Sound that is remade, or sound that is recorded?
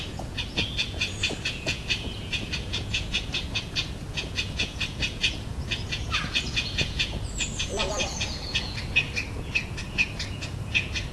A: remade